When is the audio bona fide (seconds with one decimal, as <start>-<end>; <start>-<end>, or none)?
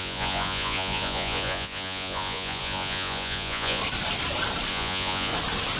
3.8-4.7; 5.3-5.8